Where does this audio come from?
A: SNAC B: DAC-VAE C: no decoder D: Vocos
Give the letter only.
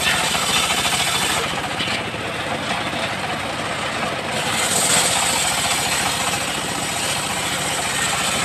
C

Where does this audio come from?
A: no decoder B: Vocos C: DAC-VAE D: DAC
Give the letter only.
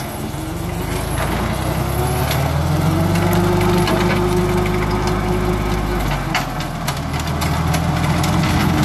A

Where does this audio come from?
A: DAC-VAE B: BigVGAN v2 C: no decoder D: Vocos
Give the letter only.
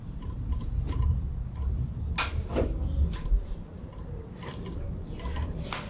C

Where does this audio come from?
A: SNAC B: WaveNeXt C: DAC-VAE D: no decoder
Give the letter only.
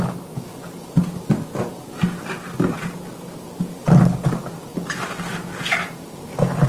D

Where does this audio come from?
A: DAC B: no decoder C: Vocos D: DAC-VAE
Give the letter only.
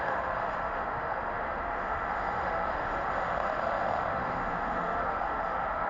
D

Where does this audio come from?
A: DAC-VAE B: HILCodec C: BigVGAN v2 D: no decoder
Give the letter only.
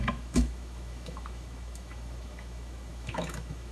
A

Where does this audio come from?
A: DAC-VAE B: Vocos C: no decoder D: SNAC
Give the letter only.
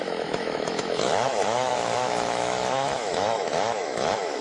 A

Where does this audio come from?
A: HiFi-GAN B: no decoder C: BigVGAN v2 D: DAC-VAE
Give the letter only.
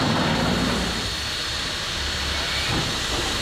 B